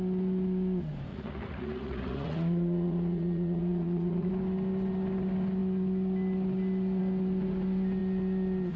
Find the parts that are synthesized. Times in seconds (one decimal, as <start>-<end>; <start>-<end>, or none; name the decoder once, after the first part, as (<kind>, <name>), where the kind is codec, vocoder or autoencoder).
1.1-4.3 (vocoder, Vocos)